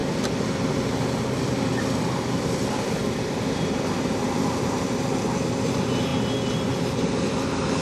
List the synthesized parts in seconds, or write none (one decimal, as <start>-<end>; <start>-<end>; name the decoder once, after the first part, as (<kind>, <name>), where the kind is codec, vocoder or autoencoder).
0.6-7.8 (vocoder, BigVGAN v2)